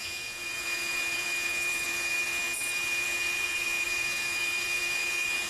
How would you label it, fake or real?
fake